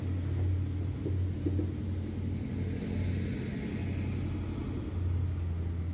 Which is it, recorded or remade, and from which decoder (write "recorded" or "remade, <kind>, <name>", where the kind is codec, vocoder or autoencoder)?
recorded